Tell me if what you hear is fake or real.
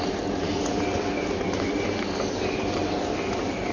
real